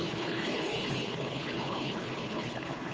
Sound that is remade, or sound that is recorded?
remade